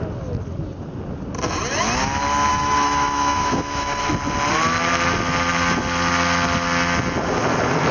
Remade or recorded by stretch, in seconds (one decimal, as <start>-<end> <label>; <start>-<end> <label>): 0.0-2.5 recorded; 2.5-4.0 remade; 4.0-7.9 recorded